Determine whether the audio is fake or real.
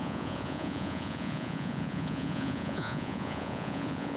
fake